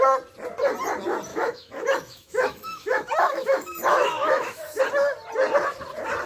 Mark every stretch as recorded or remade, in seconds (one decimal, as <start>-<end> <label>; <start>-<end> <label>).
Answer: 0.0-1.3 recorded; 1.3-4.8 remade; 4.8-6.3 recorded